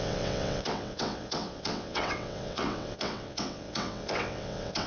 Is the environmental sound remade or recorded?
remade